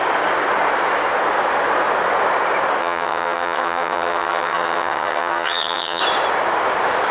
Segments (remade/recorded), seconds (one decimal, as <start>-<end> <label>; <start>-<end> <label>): 0.0-2.8 recorded; 2.8-6.0 remade; 6.0-7.1 recorded